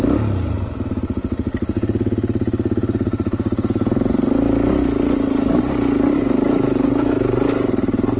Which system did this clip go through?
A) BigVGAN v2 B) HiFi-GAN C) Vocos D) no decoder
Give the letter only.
D